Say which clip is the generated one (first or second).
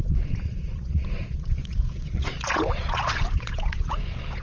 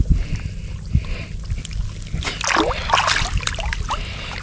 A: first